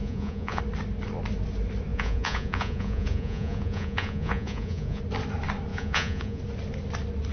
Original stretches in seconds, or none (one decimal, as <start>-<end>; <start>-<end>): 0.6-1.9; 5.0-5.7; 6.4-7.3